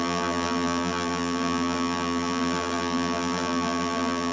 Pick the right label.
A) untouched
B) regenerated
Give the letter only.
B